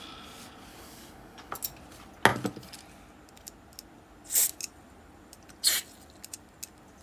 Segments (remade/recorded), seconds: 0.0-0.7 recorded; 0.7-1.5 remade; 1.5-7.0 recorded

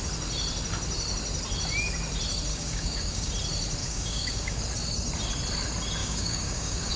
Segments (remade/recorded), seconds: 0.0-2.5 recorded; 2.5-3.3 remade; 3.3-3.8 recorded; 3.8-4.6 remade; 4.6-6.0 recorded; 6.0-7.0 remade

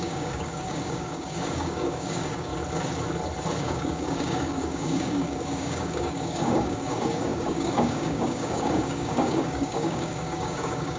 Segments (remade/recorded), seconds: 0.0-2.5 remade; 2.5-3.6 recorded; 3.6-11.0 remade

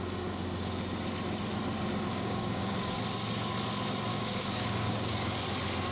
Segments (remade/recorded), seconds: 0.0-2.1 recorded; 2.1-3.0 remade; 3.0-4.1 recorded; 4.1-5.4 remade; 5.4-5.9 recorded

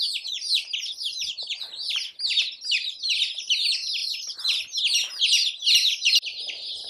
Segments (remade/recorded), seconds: 0.0-6.9 recorded

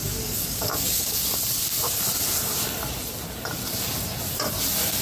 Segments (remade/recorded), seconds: 0.0-1.2 remade; 1.2-5.0 recorded